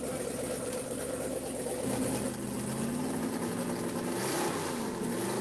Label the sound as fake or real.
real